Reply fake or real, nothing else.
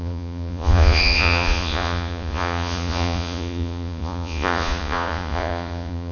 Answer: fake